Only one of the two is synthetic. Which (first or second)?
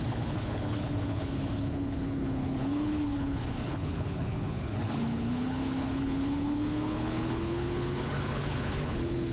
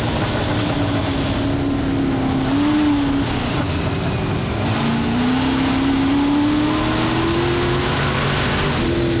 first